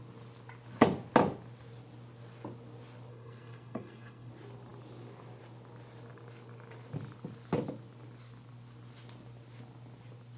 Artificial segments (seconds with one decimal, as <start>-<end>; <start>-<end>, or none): 3.1-4.3